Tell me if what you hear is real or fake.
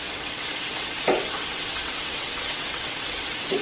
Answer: fake